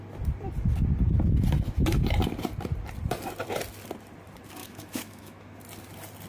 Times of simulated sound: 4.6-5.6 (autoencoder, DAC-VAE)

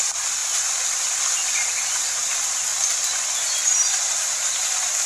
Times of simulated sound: none

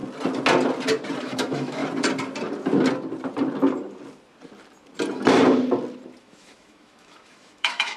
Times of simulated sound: 1.2-1.8 (autoencoder, DAC-VAE); 6.2-8.0

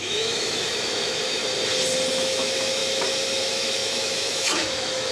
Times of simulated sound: 0.0-1.4 (autoencoder, DAC-VAE); 2.1-2.8; 3.4-5.1